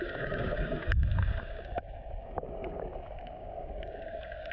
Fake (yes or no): yes